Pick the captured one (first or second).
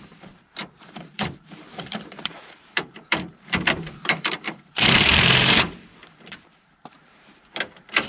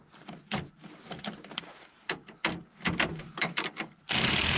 second